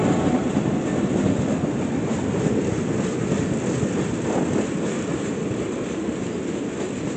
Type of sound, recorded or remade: recorded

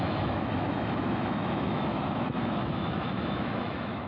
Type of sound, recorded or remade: remade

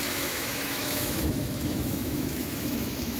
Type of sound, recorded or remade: remade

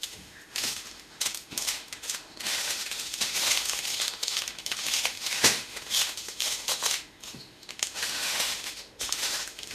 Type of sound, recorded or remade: remade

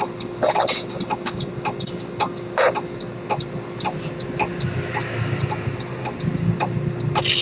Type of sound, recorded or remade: recorded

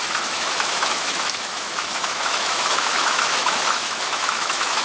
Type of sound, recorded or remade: remade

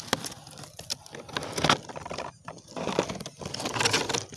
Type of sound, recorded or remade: recorded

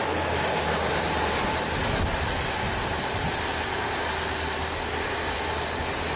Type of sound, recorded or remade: recorded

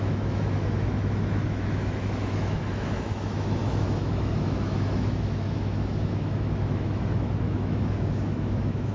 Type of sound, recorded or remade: remade